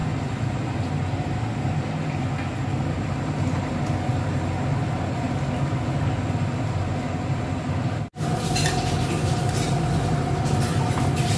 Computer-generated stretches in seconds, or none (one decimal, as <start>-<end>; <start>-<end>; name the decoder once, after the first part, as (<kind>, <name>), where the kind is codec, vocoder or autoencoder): none